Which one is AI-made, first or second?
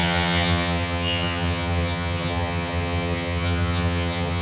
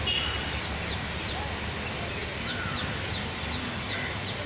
first